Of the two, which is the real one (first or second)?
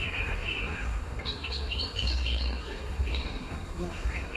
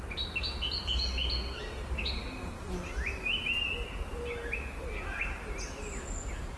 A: second